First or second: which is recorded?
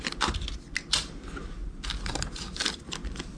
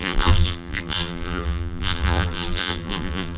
first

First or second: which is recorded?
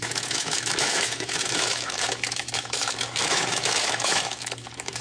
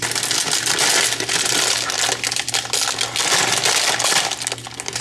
second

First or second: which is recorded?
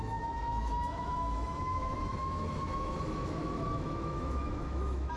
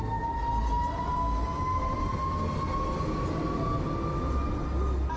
second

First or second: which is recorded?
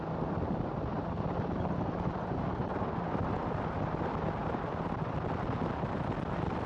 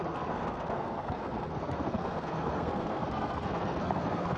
first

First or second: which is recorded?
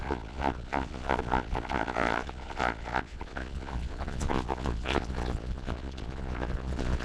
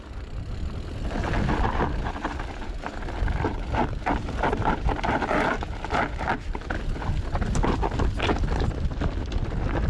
second